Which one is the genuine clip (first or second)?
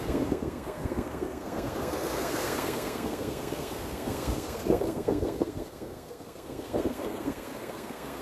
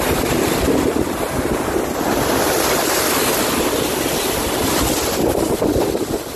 second